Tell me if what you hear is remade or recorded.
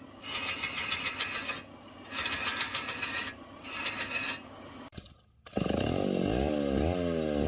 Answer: recorded